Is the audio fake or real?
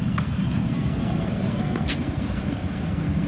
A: fake